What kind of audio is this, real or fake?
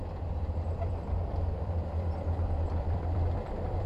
fake